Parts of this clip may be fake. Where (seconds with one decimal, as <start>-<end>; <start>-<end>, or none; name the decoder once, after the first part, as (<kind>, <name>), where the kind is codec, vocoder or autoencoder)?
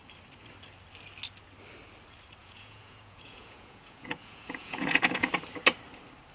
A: 2.4-5.3 (vocoder, Vocos)